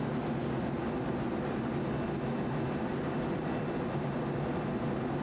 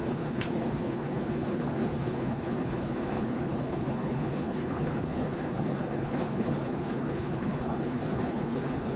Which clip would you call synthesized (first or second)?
second